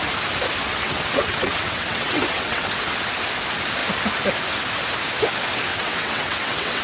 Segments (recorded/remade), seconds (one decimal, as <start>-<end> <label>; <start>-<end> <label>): 0.0-0.7 recorded; 0.7-2.7 remade; 2.7-5.7 recorded; 5.7-6.8 remade

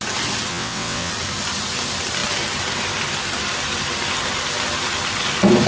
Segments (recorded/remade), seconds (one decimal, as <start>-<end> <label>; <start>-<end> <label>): 0.0-0.5 recorded; 0.5-1.1 remade; 1.1-5.7 recorded

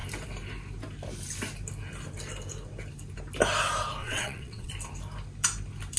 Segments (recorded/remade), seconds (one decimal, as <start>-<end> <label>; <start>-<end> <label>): 0.0-4.0 recorded; 4.0-4.7 remade; 4.7-6.0 recorded

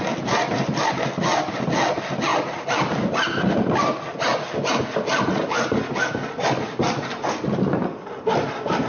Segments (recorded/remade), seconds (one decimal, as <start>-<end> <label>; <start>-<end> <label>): 0.0-8.9 recorded

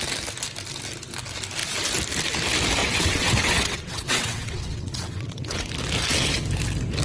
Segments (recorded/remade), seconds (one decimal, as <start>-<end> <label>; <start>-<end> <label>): 0.0-2.8 recorded; 2.8-5.7 remade; 5.7-7.0 recorded

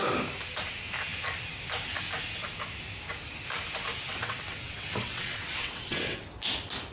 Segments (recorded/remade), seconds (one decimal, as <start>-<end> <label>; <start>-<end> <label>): 0.0-4.2 recorded; 4.2-6.2 remade; 6.2-6.9 recorded